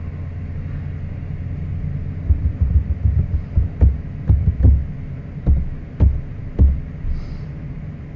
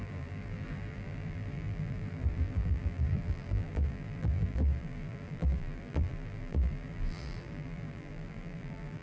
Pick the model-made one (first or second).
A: second